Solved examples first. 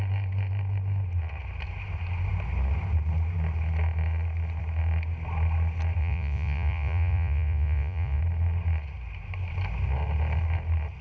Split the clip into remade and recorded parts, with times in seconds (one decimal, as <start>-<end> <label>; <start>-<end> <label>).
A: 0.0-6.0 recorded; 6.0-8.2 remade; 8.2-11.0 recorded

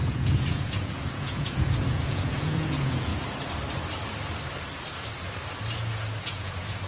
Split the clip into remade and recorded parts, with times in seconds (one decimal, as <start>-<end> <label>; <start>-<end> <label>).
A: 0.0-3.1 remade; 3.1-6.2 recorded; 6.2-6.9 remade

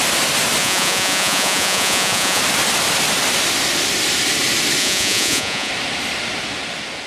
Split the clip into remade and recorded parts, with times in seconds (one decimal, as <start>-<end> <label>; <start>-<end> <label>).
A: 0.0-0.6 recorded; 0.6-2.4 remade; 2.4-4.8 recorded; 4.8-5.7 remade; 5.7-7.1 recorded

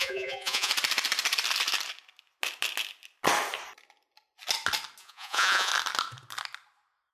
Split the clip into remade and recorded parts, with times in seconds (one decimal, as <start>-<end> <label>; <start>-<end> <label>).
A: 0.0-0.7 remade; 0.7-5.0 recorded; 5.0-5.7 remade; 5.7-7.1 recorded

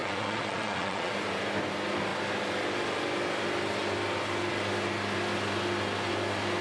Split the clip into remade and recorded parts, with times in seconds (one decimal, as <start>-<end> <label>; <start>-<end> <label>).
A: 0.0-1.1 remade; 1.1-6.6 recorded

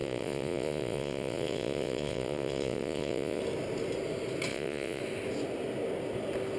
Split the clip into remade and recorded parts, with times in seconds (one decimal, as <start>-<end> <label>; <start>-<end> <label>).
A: 0.0-3.4 remade; 3.4-4.5 recorded; 4.5-5.0 remade; 5.0-6.6 recorded